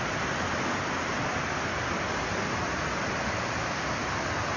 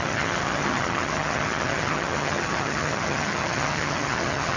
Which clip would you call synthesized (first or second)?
second